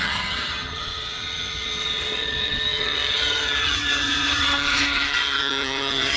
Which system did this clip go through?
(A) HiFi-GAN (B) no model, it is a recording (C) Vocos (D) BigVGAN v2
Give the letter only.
A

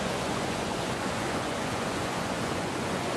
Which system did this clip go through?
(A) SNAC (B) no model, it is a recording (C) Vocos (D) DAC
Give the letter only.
C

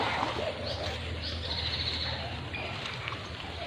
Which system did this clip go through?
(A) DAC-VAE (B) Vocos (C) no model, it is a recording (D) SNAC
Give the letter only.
C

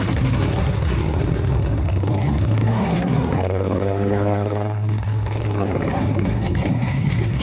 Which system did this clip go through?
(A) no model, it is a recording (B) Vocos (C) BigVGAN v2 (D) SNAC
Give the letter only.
D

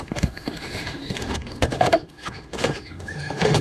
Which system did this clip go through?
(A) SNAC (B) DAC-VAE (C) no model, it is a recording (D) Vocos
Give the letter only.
B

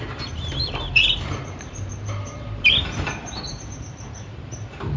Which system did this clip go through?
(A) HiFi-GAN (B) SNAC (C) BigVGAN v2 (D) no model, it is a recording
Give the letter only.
C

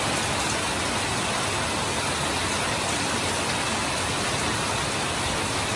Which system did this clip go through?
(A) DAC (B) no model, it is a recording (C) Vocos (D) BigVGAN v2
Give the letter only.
B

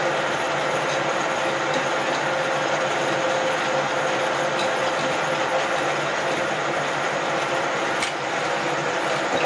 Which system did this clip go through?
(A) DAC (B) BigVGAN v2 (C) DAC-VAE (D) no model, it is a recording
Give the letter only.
D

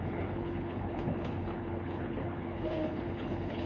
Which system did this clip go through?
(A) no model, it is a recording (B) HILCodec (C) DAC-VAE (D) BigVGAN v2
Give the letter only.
B